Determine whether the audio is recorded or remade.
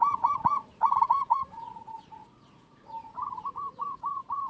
remade